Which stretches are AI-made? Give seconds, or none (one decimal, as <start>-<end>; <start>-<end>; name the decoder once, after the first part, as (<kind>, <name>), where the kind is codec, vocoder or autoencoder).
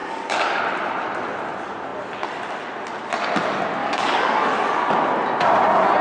0.0-0.6 (codec, DAC); 3.8-4.6